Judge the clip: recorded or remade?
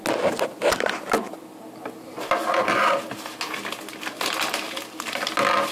recorded